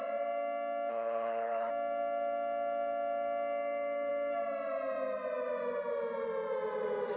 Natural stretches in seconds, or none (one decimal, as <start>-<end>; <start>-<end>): 0.0-0.9; 1.7-7.2